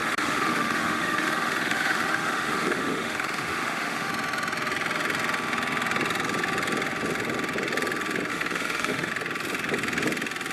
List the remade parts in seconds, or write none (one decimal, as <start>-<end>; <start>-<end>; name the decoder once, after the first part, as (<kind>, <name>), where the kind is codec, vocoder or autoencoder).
0.0-4.1 (autoencoder, DAC-VAE); 8.3-9.1